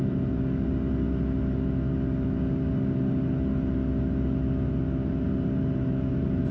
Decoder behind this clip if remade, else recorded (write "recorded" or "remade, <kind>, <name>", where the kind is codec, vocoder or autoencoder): recorded